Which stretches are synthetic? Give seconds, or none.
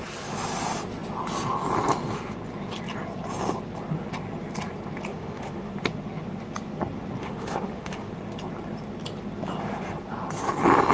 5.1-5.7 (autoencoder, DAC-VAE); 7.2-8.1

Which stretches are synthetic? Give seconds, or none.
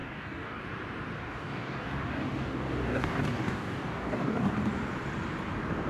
0.0-0.6 (codec, DAC); 1.2-4.5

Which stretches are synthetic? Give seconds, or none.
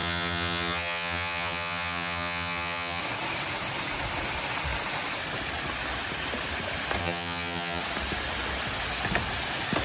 0.0-3.0 (vocoder, HiFi-GAN); 7.0-7.8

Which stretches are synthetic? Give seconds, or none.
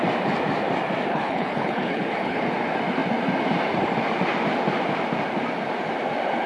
1.1-2.5 (codec, HILCodec)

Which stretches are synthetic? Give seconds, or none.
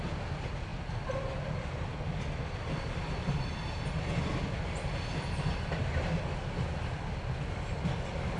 none